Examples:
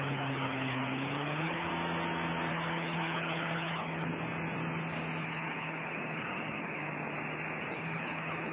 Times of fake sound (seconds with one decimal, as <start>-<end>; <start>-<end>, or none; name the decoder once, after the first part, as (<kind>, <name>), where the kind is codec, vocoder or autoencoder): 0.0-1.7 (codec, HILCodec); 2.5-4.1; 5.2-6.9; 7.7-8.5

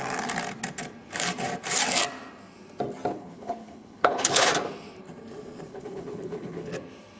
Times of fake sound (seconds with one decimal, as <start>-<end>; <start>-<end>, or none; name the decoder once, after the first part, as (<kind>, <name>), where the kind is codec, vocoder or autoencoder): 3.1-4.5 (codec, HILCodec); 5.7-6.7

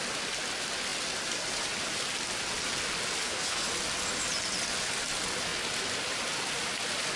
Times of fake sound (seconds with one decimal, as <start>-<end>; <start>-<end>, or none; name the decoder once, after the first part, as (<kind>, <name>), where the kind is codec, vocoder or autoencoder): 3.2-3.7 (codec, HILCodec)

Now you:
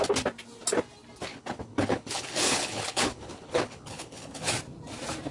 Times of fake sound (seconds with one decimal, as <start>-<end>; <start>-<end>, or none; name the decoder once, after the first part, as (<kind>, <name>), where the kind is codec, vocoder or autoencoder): 1.3-4.5 (codec, HILCodec)

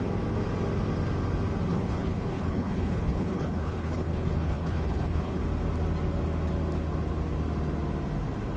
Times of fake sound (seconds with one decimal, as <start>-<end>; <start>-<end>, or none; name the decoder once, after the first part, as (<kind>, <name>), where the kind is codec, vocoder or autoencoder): 1.7-5.4 (codec, HILCodec)